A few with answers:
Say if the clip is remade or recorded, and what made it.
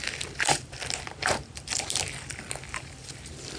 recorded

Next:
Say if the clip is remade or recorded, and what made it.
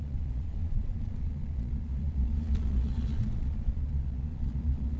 remade, vocoder, Vocos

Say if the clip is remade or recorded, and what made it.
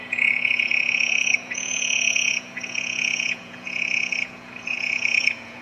remade, vocoder, Vocos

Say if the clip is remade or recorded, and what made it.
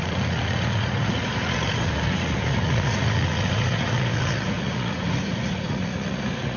remade, vocoder, Vocos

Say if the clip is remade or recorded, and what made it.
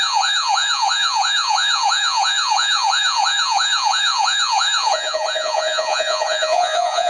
remade, vocoder, Vocos